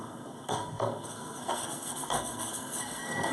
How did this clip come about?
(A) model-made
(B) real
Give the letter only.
A